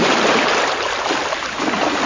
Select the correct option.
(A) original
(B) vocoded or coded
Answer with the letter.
A